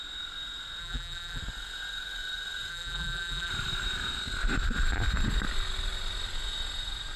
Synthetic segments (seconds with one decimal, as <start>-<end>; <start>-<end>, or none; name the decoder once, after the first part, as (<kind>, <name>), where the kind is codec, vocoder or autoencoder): 0.8-1.4 (vocoder, BigVGAN v2); 2.7-3.5

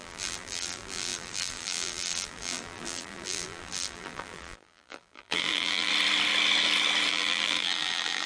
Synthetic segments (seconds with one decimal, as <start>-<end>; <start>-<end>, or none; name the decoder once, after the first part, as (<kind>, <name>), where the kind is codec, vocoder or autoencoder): 0.0-5.9 (vocoder, BigVGAN v2); 7.1-8.3